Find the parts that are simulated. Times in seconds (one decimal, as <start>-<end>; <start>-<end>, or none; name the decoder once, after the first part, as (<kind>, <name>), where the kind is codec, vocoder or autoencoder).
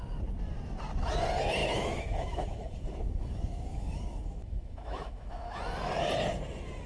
1.6-5.6 (autoencoder, DAC-VAE)